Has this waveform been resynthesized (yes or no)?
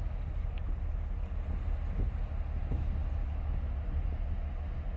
no